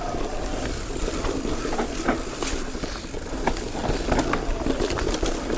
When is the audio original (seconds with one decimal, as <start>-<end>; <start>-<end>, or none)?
0.0-5.6